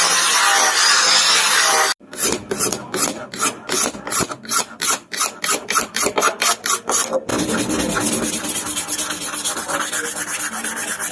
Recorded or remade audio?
recorded